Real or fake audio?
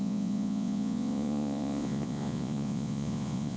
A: fake